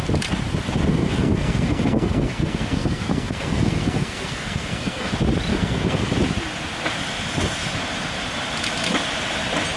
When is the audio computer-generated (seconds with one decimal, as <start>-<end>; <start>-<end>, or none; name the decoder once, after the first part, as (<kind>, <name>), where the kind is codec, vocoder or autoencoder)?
0.9-5.1 (codec, SNAC); 5.5-6.1